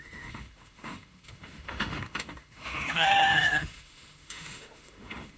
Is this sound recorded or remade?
remade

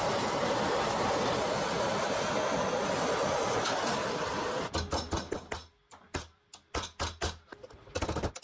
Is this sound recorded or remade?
recorded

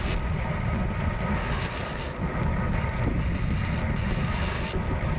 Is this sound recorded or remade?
recorded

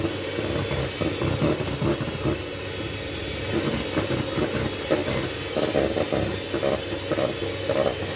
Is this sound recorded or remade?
recorded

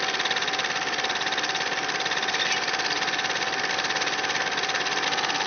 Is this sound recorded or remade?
recorded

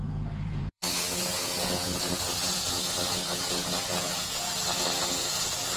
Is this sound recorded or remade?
remade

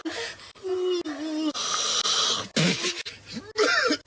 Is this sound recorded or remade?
recorded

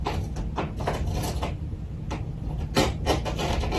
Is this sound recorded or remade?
recorded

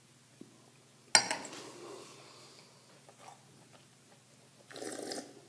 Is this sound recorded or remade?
recorded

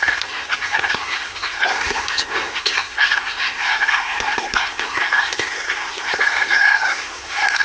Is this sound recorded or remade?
remade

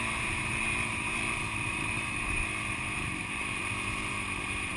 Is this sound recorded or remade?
remade